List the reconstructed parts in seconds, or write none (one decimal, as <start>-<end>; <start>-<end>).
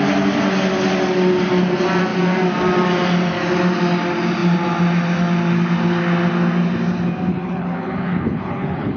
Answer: 7.3-9.0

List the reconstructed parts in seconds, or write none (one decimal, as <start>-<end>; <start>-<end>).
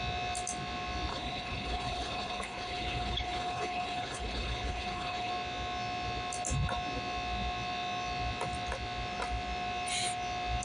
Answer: 1.1-5.3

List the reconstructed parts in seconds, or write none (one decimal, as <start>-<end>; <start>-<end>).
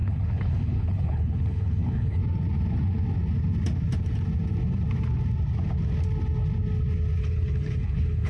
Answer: 0.0-2.2; 7.2-8.3